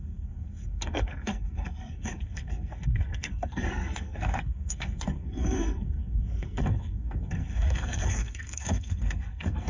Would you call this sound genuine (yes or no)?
no